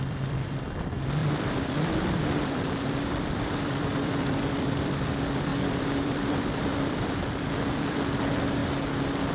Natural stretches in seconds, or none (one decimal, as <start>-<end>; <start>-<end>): 8.6-9.3

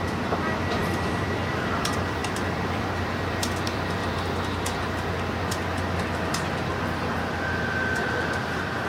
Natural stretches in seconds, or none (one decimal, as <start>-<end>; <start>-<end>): 4.0-8.9

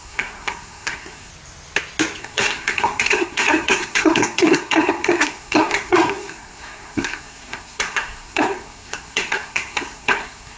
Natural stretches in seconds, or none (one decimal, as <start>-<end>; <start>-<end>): 1.3-2.2

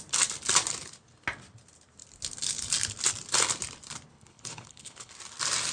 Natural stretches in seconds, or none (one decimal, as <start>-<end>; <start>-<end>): 0.0-4.1; 5.1-5.7

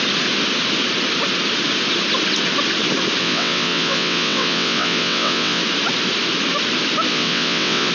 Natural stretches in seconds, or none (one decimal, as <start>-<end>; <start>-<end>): 0.0-3.2; 5.6-7.1